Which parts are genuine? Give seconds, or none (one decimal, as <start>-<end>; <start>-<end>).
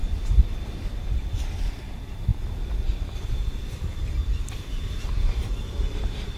0.0-6.4